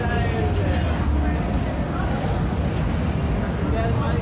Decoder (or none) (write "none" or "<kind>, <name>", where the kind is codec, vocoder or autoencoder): none